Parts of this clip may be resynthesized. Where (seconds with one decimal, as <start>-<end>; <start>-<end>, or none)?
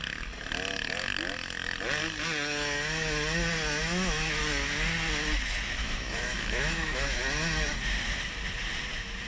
3.8-4.4; 5.8-7.2